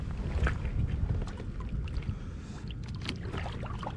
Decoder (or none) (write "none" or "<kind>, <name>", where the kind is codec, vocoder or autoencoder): none